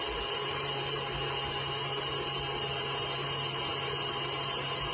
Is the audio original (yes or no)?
yes